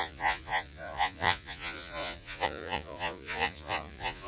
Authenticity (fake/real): fake